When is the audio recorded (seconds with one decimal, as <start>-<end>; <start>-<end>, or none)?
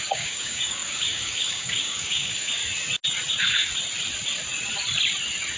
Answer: 2.6-5.6